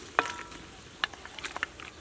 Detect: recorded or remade recorded